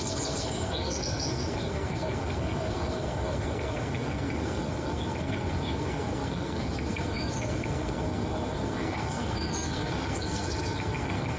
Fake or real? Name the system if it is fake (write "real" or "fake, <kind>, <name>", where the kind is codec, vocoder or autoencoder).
fake, codec, SNAC